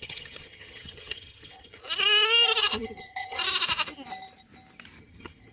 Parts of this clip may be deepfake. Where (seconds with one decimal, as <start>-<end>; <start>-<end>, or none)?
0.0-1.8; 2.6-3.4; 5.0-5.5